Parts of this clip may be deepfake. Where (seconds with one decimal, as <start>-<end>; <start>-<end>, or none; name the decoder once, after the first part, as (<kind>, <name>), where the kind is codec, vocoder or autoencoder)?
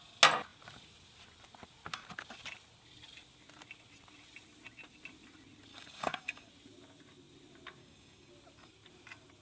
5.7-6.5 (codec, DAC); 7.8-8.3